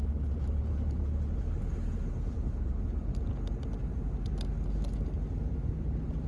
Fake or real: real